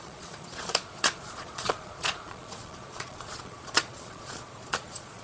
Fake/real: fake